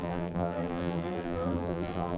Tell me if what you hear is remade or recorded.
remade